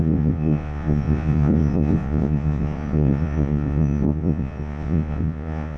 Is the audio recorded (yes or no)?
no